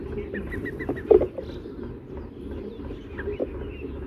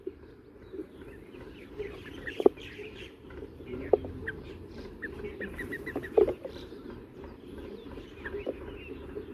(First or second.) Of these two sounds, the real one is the first